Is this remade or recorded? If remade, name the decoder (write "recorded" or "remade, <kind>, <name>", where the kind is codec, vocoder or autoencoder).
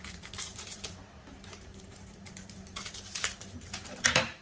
remade, vocoder, BigVGAN v2